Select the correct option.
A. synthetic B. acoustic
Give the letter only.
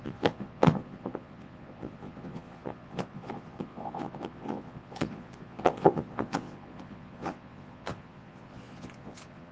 A